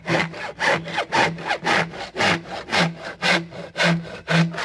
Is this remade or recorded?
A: recorded